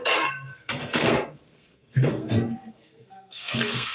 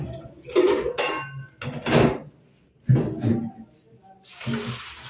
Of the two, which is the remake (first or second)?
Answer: first